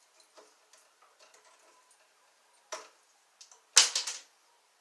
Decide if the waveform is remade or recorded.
recorded